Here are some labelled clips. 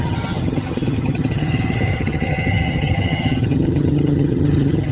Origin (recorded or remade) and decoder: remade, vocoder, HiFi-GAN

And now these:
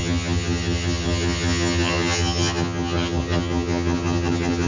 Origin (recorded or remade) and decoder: remade, vocoder, HiFi-GAN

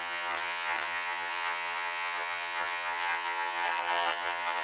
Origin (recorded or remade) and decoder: remade, vocoder, HiFi-GAN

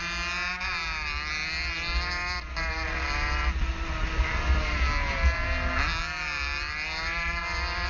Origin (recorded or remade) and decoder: recorded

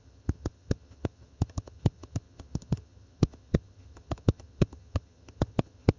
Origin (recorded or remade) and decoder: remade, vocoder, HiFi-GAN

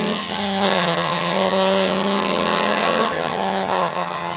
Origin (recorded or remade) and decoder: remade, vocoder, HiFi-GAN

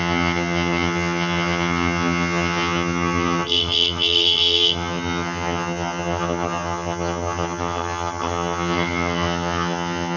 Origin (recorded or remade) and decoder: remade, vocoder, HiFi-GAN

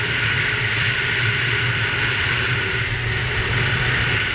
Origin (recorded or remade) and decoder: recorded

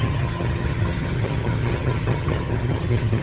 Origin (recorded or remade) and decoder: remade, vocoder, HiFi-GAN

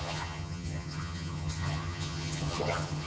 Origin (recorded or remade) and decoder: remade, vocoder, HiFi-GAN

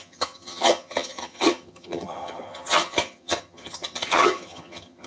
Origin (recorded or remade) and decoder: remade, vocoder, HiFi-GAN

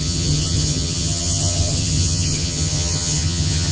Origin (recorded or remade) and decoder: remade, vocoder, HiFi-GAN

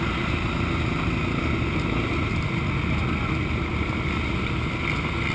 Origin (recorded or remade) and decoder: recorded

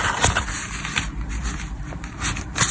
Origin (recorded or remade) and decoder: recorded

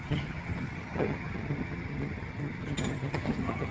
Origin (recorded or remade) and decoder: remade, vocoder, HiFi-GAN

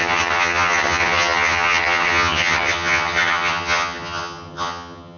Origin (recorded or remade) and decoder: remade, vocoder, HiFi-GAN